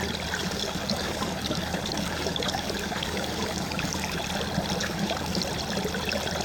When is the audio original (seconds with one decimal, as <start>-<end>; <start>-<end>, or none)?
0.0-0.4; 4.2-4.8; 5.4-6.4